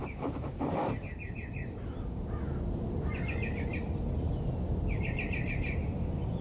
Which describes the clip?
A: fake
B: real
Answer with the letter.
A